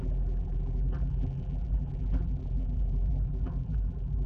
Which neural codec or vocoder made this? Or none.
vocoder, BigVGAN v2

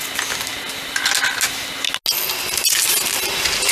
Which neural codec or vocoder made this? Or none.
none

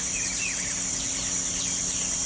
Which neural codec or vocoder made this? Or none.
none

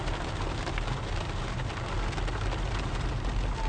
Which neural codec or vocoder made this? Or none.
none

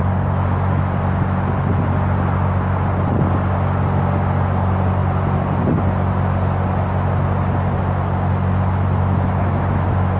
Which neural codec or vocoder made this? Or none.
none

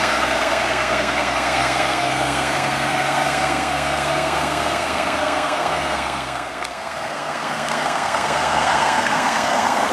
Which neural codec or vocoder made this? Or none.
codec, SNAC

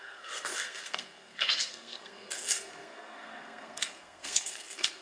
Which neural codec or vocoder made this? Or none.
codec, SNAC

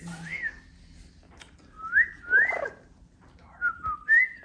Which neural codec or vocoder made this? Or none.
none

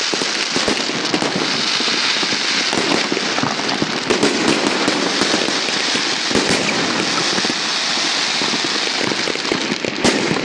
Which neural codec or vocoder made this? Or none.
none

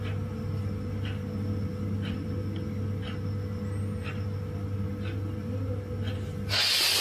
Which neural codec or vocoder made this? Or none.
none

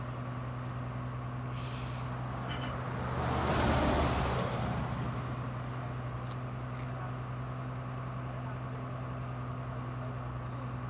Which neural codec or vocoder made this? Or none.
none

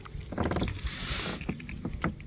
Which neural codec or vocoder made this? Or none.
none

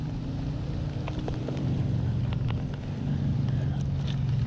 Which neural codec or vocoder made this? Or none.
none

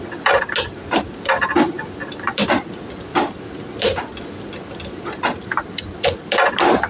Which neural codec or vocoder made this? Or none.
none